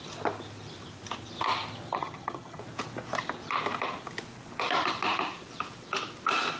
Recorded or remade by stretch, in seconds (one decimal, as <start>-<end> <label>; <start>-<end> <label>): 0.0-1.9 recorded; 1.9-2.6 remade; 2.6-6.6 recorded